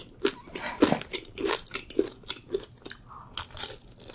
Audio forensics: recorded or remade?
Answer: recorded